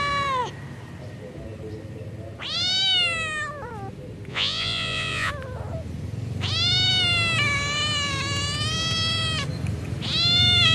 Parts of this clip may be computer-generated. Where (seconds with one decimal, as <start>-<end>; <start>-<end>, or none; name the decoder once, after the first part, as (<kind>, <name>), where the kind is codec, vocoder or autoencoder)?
4.3-5.3 (vocoder, Vocos)